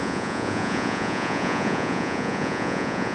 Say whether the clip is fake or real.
fake